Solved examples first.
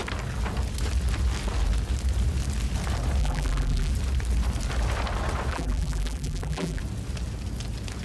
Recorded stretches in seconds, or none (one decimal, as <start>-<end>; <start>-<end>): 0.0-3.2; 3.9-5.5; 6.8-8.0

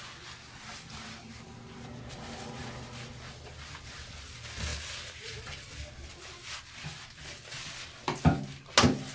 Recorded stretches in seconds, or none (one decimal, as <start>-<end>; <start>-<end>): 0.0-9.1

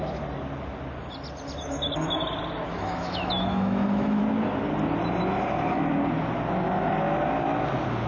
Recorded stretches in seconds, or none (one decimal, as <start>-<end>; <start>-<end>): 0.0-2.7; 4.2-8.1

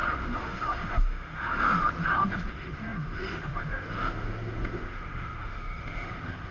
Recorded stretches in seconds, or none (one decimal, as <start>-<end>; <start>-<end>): none

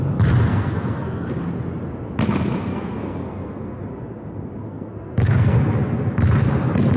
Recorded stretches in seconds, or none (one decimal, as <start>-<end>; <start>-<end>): 0.0-0.5; 1.3-2.7; 3.8-4.6; 5.6-7.0

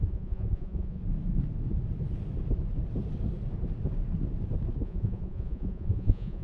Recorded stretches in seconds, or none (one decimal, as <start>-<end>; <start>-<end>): 1.0-4.8

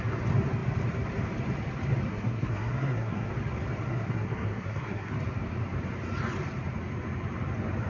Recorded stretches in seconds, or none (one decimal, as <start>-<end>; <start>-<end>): 0.0-2.1; 3.3-3.9; 5.1-7.9

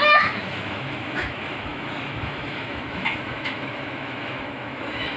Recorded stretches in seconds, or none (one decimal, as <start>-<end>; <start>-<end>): none